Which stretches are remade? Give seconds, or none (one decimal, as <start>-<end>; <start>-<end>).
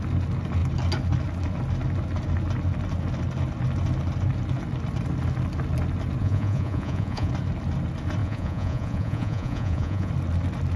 6.2-7.3; 8.2-10.1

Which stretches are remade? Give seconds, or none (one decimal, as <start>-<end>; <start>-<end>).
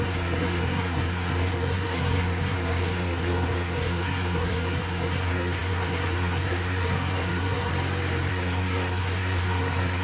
0.0-7.7; 8.3-10.0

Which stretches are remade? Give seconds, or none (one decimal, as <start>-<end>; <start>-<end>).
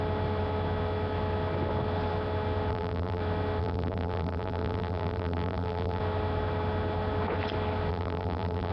2.7-3.2; 3.6-6.0; 7.9-8.7